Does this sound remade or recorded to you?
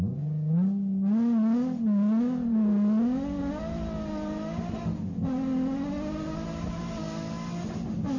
recorded